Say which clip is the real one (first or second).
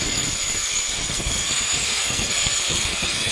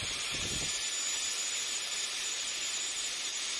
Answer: second